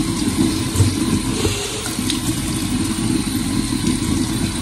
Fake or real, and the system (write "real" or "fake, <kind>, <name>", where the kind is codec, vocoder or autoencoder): real